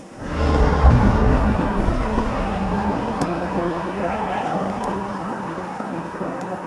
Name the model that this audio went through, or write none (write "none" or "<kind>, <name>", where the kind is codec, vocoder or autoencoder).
codec, SNAC